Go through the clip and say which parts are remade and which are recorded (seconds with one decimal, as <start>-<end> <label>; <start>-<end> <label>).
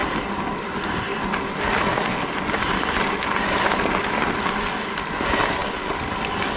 0.0-6.6 recorded